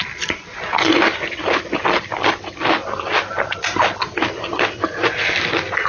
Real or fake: real